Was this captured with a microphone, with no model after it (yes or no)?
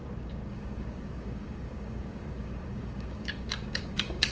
no